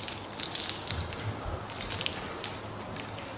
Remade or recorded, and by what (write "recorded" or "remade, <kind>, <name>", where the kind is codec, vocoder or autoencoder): recorded